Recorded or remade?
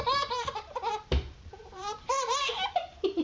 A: remade